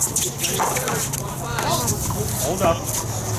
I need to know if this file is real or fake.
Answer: real